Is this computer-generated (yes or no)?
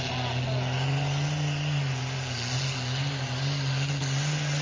no